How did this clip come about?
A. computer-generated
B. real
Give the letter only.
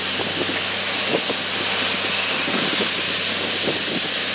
B